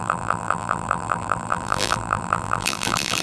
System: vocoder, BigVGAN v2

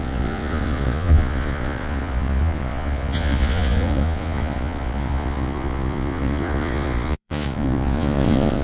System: vocoder, Vocos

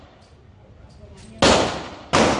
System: none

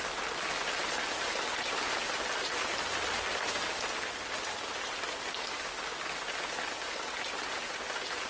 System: none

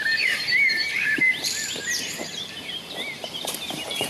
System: vocoder, BigVGAN v2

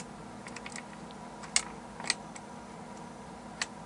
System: none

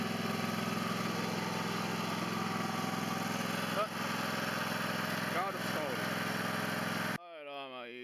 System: none